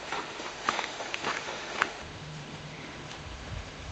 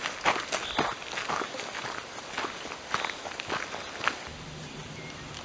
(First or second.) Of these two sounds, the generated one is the first